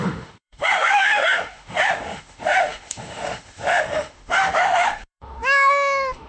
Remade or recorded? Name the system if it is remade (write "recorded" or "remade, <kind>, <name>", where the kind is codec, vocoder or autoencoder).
remade, autoencoder, DAC-VAE